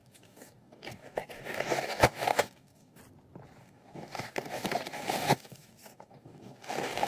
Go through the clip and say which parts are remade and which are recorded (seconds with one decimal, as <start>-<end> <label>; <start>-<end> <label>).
0.0-3.0 remade; 3.0-3.6 recorded; 3.6-7.1 remade